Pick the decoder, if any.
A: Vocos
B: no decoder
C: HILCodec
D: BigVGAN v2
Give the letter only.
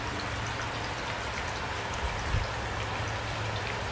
B